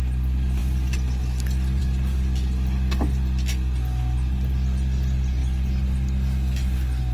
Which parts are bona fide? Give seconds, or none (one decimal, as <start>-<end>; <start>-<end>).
0.0-7.1